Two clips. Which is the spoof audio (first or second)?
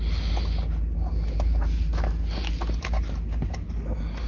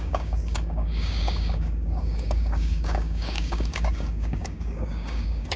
second